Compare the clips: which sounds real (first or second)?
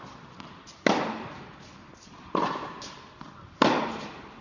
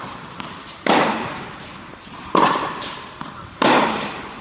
first